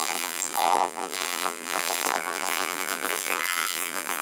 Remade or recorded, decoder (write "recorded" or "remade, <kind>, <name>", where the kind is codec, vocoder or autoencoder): remade, vocoder, BigVGAN v2